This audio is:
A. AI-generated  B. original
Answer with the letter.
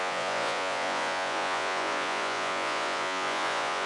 A